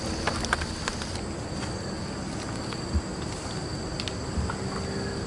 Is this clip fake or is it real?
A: real